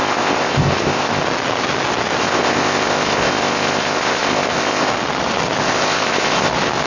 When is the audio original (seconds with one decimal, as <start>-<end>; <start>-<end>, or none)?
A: 1.2-2.2; 4.9-5.6; 6.5-6.9

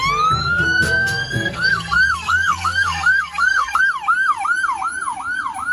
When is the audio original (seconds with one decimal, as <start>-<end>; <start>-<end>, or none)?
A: 0.0-0.4; 3.8-5.7

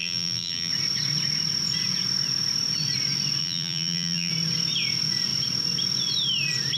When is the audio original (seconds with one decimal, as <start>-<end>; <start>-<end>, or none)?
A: 0.7-3.4; 4.3-6.8

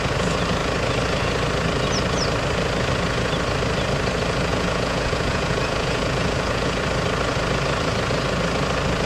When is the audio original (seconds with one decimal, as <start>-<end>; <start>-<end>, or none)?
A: 0.0-4.5; 6.8-9.1

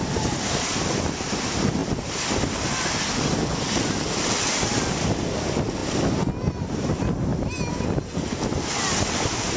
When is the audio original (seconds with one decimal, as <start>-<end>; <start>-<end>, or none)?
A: 0.0-9.6

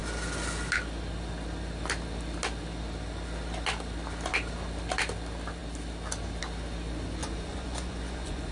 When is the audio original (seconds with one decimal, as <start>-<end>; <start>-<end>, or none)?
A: 0.0-7.2

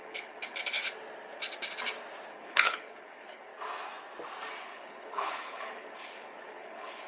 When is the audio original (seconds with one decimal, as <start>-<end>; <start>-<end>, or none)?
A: 0.8-2.3; 3.5-4.6